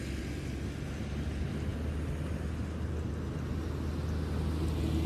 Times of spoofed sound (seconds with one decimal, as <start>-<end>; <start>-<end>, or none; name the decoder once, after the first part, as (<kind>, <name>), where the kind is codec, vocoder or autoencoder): none